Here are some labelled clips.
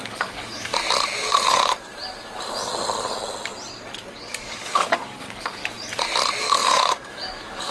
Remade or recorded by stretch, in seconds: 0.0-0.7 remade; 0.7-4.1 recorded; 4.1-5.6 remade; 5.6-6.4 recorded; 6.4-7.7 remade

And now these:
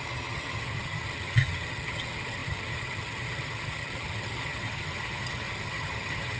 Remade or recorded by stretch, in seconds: 0.0-6.4 remade

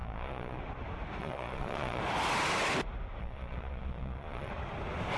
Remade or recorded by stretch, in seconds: 0.0-0.6 remade; 0.6-1.2 recorded; 1.2-2.0 remade; 2.0-3.2 recorded; 3.2-4.5 remade; 4.5-5.2 recorded

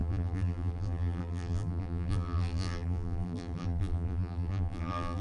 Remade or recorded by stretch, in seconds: 0.0-5.2 remade